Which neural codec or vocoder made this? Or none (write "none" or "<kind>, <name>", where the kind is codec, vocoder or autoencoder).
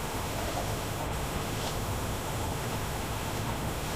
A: autoencoder, DAC-VAE